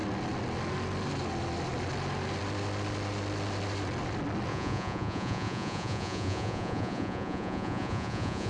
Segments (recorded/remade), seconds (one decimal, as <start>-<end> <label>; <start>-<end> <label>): 0.0-4.5 recorded; 4.5-8.5 remade